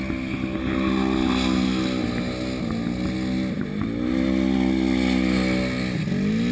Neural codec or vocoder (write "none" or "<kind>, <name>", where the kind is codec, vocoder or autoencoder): none